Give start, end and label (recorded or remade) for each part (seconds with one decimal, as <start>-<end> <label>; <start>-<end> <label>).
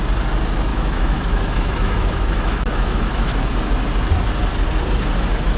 0.0-0.7 recorded; 0.7-3.5 remade; 3.5-5.6 recorded